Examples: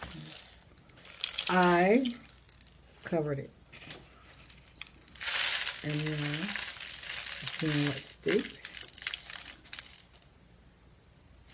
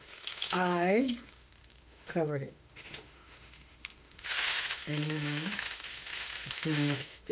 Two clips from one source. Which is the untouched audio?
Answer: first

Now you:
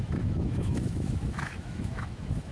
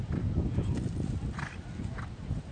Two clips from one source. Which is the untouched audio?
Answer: second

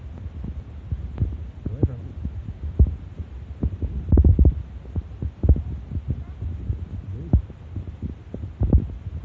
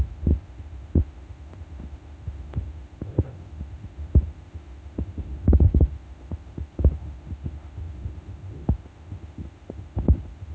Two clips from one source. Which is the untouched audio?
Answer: first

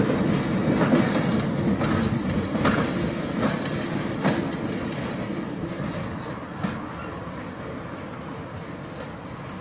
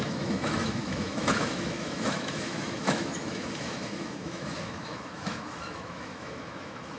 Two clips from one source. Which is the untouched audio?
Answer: first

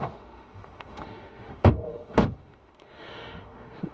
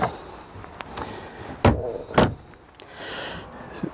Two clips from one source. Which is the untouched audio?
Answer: second